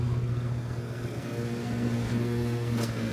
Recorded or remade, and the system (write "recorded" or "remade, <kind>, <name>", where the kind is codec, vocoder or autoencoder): remade, codec, SNAC